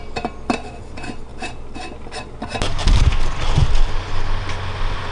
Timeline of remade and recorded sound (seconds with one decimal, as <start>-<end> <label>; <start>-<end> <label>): 0.0-5.1 recorded

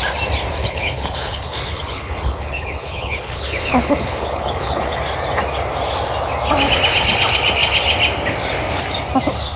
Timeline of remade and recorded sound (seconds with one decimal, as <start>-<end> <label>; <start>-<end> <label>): 0.0-0.6 recorded; 0.6-5.0 remade; 5.0-9.6 recorded

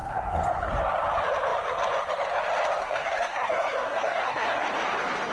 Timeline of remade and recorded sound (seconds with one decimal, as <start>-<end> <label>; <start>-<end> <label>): 0.0-0.7 remade; 0.7-2.8 recorded; 2.8-4.6 remade; 4.6-5.3 recorded

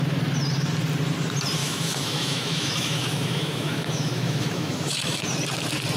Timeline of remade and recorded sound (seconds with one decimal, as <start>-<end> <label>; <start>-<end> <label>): 0.0-1.6 recorded; 1.6-5.2 remade; 5.2-6.0 recorded

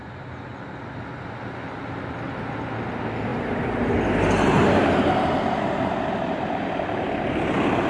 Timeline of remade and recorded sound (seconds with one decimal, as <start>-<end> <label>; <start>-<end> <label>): 0.0-3.3 recorded; 3.3-6.6 remade; 6.6-7.9 recorded

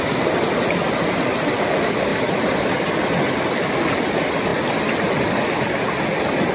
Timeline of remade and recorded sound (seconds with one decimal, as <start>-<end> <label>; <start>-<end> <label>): 0.0-6.5 recorded

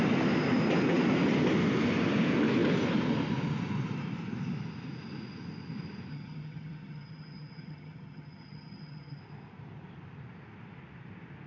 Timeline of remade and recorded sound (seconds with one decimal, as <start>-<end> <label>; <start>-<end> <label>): 0.0-6.1 recorded; 6.1-9.2 remade; 9.2-11.5 recorded

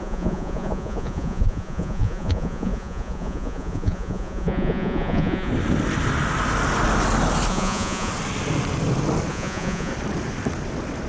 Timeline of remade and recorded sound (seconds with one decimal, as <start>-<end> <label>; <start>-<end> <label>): 0.0-5.5 remade; 5.5-7.5 recorded; 7.5-8.1 remade; 8.1-9.3 recorded; 9.3-9.9 remade; 9.9-11.1 recorded